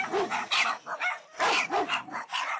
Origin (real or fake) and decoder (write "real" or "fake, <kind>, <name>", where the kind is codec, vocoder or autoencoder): real